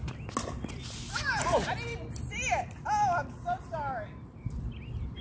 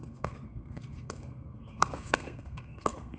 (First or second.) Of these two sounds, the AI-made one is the second